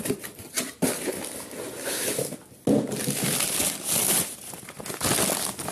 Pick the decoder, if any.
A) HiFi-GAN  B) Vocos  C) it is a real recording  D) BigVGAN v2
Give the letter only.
C